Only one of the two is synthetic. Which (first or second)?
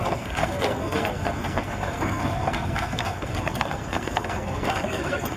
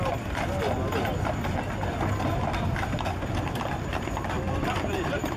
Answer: first